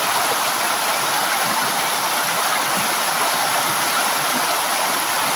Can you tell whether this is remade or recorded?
recorded